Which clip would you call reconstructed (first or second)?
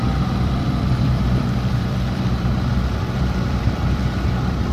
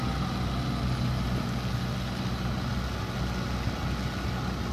first